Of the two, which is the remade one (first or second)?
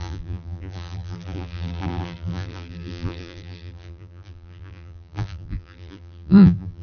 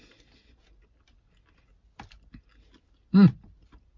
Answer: first